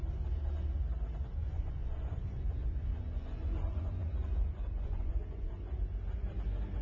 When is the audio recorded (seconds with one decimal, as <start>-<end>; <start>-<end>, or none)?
0.0-1.4; 5.5-6.8